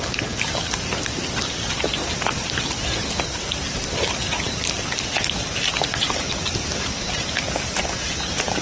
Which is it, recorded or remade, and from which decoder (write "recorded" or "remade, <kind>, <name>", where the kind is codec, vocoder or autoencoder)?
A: recorded